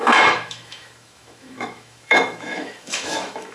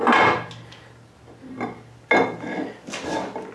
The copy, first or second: first